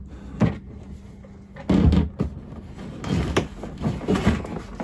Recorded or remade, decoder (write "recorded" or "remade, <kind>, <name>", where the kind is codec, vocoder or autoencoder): recorded